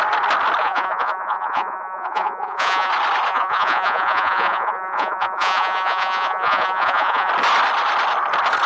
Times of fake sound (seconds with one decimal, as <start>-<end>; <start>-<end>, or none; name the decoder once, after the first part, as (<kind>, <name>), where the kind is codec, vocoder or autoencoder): 0.6-2.9 (vocoder, Vocos); 3.3-7.3